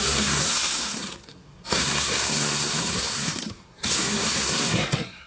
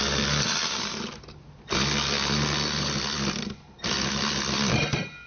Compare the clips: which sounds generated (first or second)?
first